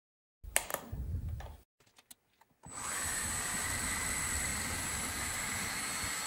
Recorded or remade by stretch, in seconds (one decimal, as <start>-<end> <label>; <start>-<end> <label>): 0.0-0.7 recorded; 0.7-1.9 remade; 1.9-6.3 recorded